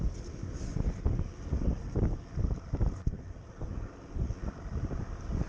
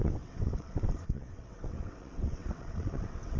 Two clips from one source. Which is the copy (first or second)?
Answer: second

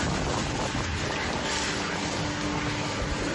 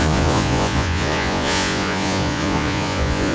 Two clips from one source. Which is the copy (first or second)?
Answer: second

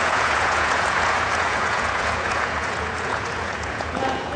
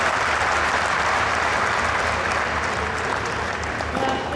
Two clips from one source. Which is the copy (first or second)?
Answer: first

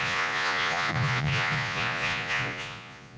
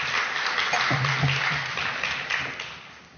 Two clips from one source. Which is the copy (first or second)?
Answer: first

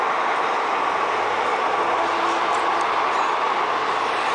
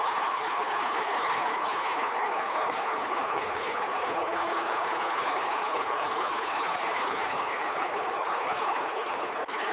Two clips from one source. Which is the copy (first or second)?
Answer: second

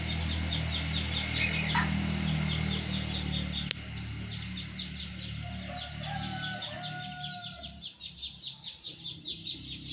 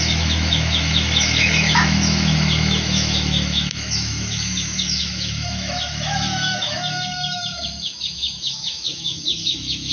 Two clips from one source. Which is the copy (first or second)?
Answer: second